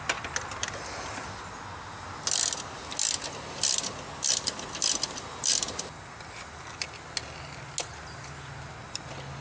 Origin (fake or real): real